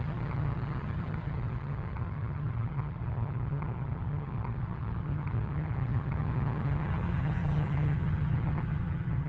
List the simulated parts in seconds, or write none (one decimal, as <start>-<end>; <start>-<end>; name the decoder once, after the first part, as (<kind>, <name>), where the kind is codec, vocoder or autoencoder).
0.0-9.3 (vocoder, HiFi-GAN)

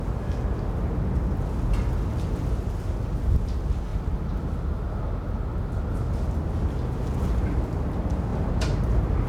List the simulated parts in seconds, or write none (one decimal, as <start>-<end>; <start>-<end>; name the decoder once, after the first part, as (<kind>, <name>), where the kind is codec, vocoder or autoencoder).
none

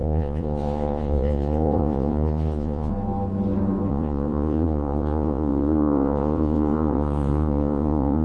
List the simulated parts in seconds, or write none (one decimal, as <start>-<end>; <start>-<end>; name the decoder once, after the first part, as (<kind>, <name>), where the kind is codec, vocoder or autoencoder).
0.0-2.9 (vocoder, Vocos); 3.9-8.2

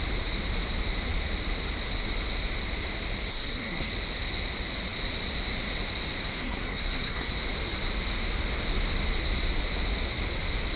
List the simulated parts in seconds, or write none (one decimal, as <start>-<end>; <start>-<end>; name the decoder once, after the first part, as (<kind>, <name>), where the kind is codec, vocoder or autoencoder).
3.3-3.9 (codec, SNAC); 6.4-7.3